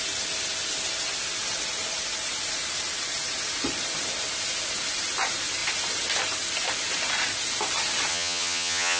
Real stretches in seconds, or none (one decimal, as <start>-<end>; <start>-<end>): 0.0-8.1